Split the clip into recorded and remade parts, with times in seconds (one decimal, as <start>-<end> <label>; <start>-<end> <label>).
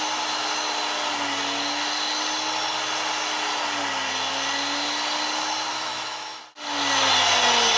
0.0-5.7 recorded; 5.7-6.4 remade; 6.4-7.8 recorded